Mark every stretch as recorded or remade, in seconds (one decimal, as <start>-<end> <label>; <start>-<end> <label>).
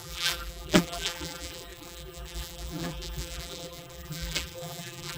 0.0-5.2 remade